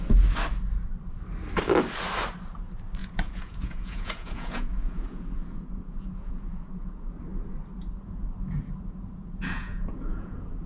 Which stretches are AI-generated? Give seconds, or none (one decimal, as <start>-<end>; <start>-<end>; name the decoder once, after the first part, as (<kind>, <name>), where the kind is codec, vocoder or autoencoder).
3.0-7.2 (vocoder, Vocos); 9.2-10.7